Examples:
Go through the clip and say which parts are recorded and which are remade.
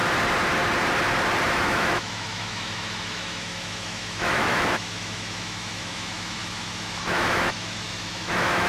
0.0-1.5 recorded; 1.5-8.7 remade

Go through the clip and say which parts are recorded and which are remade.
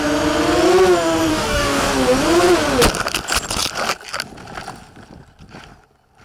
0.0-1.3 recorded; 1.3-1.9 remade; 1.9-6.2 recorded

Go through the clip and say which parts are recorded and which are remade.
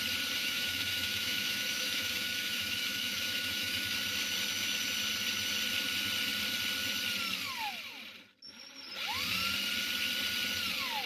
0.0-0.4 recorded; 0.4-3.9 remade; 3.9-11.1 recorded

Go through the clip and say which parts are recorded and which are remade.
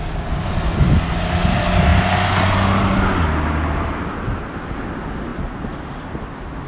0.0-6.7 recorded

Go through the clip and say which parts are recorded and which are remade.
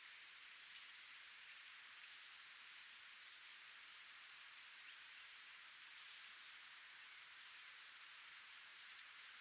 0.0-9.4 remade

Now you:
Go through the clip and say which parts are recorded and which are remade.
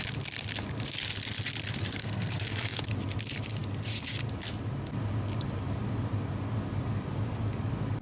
0.0-2.0 recorded; 2.0-2.8 remade; 2.8-8.0 recorded